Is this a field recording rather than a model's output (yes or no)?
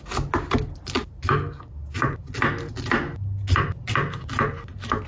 yes